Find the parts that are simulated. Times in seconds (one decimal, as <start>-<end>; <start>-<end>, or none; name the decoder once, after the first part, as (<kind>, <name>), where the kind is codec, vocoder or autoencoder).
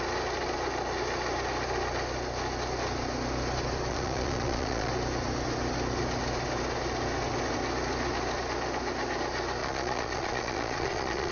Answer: 3.9-4.9 (vocoder, Vocos); 9.6-11.3